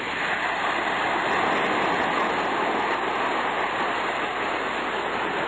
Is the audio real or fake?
real